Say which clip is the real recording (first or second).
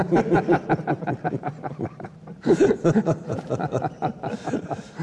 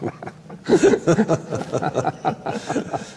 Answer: second